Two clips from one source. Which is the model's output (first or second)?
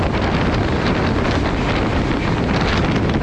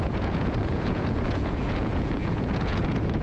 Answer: second